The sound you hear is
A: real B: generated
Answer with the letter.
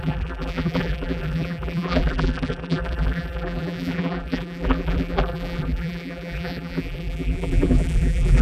B